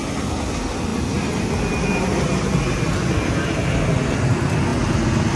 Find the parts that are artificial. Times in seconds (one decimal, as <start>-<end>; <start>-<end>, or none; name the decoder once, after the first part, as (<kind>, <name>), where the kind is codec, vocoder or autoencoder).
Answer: none